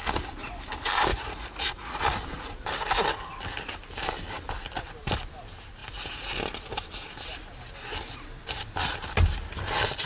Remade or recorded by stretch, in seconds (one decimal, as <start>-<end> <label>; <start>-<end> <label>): 0.0-1.1 recorded; 1.1-2.0 remade; 2.0-10.1 recorded